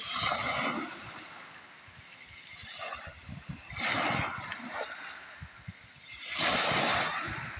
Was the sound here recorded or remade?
recorded